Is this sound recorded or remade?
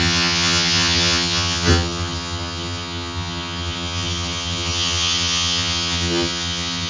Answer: remade